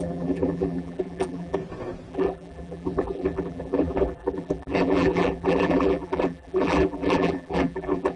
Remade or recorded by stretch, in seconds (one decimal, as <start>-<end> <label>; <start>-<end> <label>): 0.0-1.6 remade; 1.6-2.1 recorded; 2.1-8.2 remade